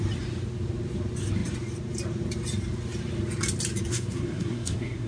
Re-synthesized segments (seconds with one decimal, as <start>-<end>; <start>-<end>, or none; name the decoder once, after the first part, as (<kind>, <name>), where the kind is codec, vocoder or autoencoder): 3.9-5.1 (codec, SNAC)

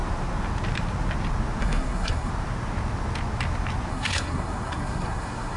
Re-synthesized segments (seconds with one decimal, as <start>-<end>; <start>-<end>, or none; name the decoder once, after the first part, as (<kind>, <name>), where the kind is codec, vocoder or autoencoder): 1.6-2.3 (codec, SNAC); 3.9-5.6